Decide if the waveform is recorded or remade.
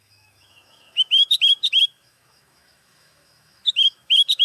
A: remade